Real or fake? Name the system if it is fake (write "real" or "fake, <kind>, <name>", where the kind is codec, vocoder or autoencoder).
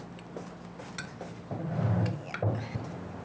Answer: real